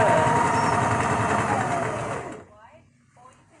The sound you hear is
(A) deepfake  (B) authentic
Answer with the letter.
B